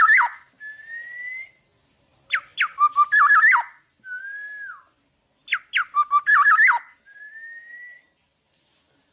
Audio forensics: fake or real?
real